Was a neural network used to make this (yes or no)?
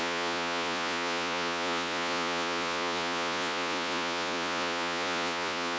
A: yes